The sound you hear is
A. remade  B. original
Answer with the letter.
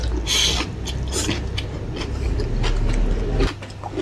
B